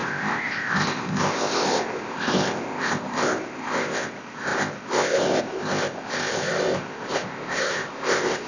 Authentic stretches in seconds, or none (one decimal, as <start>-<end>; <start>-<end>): none

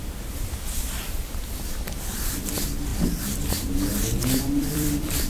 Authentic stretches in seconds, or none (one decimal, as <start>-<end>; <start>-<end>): none